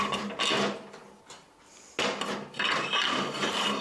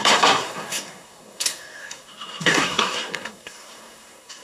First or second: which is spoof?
second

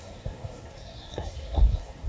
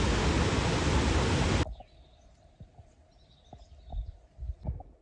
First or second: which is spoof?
first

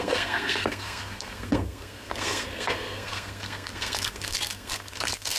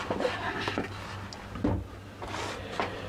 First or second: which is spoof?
first